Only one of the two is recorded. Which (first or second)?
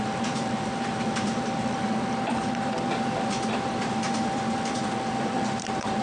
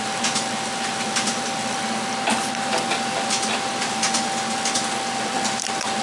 second